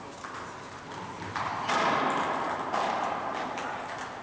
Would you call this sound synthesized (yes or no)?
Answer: no